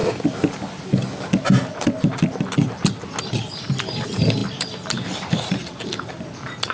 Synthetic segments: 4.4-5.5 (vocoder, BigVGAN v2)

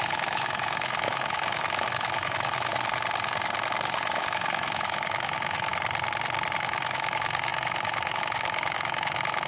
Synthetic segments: 0.0-2.7 (autoencoder, DAC-VAE); 4.2-5.7; 6.6-9.5

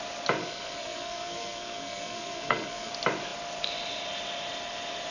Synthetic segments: 0.4-2.9 (codec, SNAC)

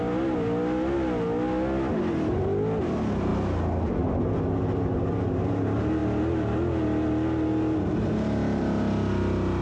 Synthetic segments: none

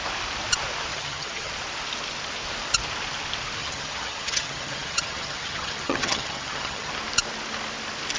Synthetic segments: 0.9-1.5 (vocoder, HiFi-GAN); 3.6-6.9

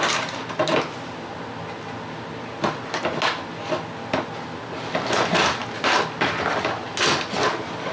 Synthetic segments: none

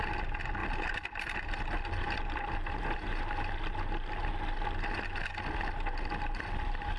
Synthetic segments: none